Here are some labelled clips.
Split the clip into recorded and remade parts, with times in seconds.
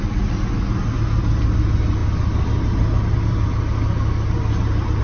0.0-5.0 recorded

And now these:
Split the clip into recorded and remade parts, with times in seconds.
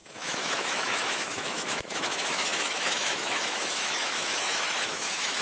0.0-5.4 remade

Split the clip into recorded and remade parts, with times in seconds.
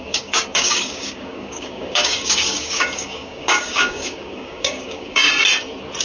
0.0-5.3 remade; 5.3-6.0 recorded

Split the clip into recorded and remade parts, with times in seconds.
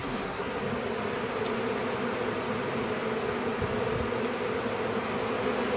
0.0-0.6 remade; 0.6-5.8 recorded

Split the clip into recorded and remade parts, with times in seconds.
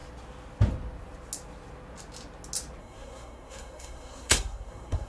0.0-2.8 recorded; 2.8-5.1 remade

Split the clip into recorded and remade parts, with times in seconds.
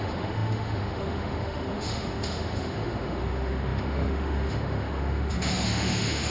0.0-6.3 remade